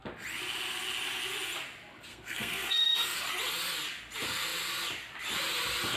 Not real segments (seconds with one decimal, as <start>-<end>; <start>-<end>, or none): 2.1-3.2